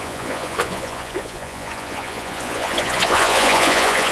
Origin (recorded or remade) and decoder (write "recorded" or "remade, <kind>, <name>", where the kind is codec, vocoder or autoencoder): remade, vocoder, Vocos